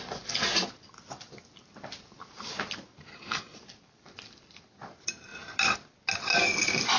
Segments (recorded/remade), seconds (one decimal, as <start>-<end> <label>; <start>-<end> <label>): 0.0-3.1 recorded; 3.1-3.6 remade; 3.6-7.0 recorded